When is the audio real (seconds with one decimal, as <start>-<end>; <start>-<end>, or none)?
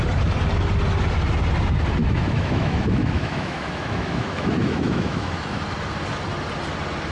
0.0-2.0; 5.6-7.1